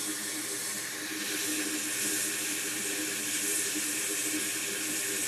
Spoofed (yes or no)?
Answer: no